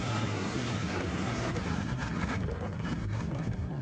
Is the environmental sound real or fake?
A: fake